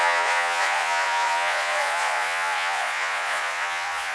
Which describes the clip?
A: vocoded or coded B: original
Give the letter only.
A